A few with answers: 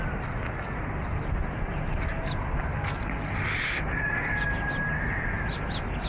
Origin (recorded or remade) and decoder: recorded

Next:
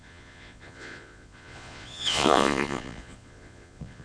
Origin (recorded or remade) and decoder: remade, vocoder, Vocos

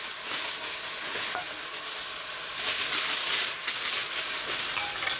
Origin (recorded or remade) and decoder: recorded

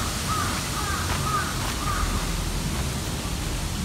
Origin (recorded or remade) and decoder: recorded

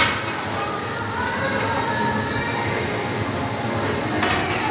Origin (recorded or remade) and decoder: recorded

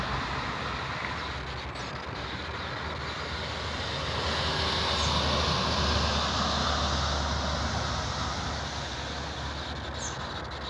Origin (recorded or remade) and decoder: recorded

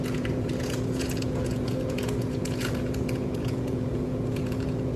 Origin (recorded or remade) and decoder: remade, vocoder, Vocos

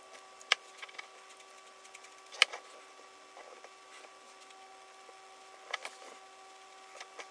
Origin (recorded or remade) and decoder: recorded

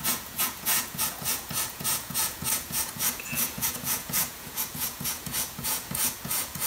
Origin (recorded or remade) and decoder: remade, vocoder, Vocos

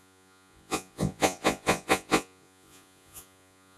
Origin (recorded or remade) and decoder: remade, vocoder, Vocos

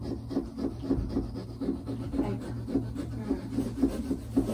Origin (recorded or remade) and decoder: recorded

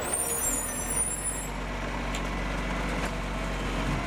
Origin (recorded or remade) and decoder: recorded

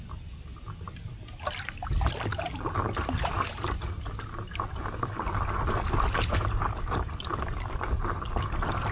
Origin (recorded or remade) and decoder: recorded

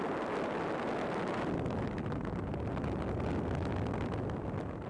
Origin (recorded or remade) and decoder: recorded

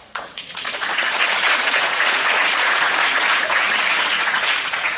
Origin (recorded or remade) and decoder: remade, vocoder, Vocos